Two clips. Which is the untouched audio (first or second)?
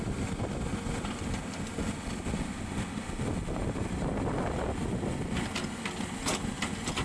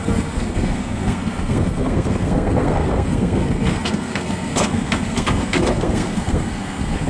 first